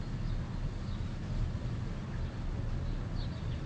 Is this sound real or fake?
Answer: real